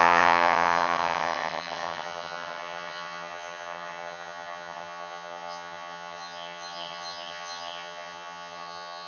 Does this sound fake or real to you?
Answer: fake